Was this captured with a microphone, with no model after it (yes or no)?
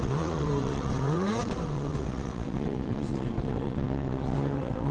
no